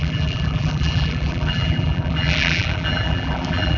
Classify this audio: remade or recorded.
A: remade